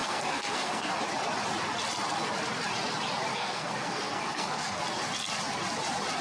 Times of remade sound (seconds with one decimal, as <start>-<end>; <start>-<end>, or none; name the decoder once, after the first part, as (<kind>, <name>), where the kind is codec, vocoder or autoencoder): 0.0-0.9 (codec, SNAC); 3.3-4.8